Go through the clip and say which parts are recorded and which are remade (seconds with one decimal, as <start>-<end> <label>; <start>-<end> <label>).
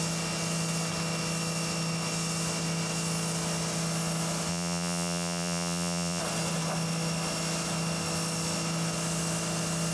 0.0-4.5 recorded; 4.5-6.2 remade; 6.2-9.9 recorded